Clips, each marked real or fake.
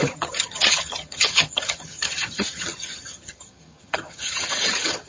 fake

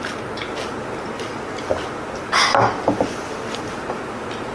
real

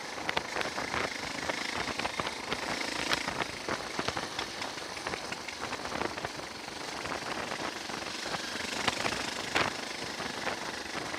real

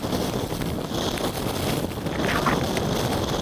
real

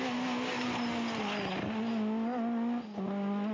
real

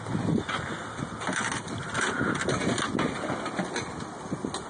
real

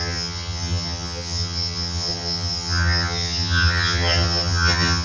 fake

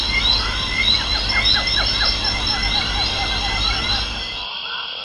real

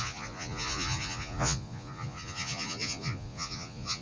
fake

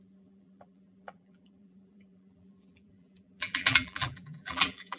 fake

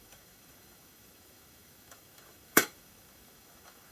fake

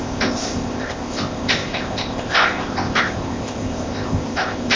fake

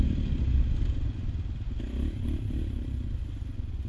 real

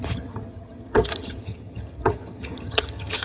fake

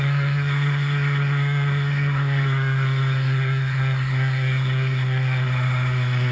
fake